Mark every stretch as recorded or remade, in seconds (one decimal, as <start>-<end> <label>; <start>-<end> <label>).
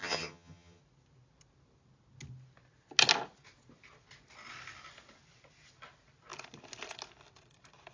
0.0-0.8 remade; 0.8-7.9 recorded